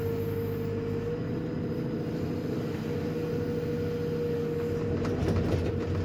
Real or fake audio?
real